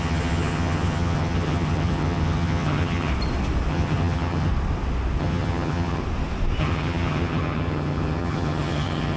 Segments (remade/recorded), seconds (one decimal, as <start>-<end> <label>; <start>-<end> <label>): 0.0-3.1 remade; 3.1-3.7 recorded; 3.7-4.5 remade; 4.5-5.2 recorded; 5.2-6.0 remade; 6.0-6.6 recorded; 6.6-9.2 remade